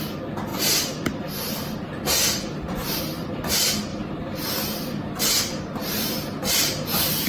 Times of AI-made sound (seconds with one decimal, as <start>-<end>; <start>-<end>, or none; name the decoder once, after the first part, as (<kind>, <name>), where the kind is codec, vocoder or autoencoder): 0.5-3.0 (vocoder, BigVGAN v2); 3.9-5.2; 5.8-7.3